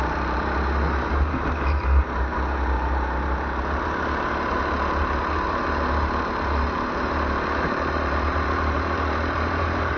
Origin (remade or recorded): remade